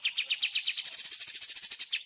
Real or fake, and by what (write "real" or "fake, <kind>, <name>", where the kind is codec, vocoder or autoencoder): real